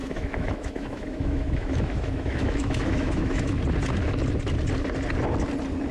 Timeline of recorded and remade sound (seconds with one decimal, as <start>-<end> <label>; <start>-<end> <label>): 0.0-3.5 remade; 3.5-5.9 recorded